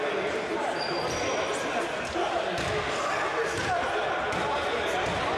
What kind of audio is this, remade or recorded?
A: recorded